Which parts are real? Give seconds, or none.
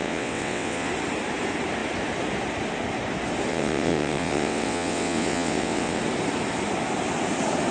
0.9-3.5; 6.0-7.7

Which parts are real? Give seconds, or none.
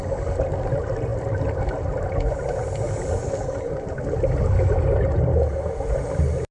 0.0-6.5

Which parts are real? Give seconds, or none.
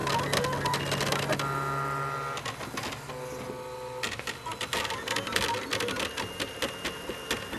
0.0-7.6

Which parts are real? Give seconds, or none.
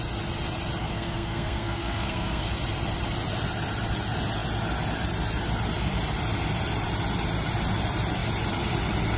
0.0-0.8; 2.5-9.2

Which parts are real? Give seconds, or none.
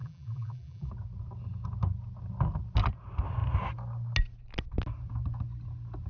0.9-6.1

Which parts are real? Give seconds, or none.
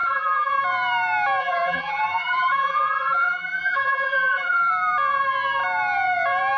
0.5-1.4; 4.7-6.6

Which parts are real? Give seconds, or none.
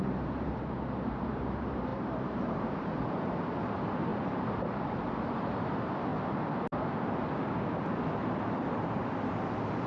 6.1-9.3